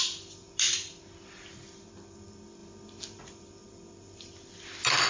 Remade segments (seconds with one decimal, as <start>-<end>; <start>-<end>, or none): none